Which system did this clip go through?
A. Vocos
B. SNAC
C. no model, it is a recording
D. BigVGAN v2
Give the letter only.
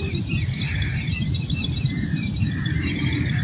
D